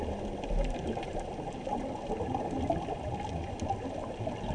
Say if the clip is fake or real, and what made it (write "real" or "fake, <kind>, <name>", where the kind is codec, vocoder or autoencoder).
real